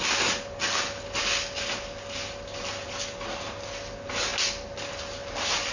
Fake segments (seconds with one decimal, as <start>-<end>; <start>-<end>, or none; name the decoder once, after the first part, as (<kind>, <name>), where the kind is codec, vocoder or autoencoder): none